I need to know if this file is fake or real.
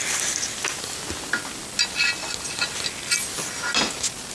real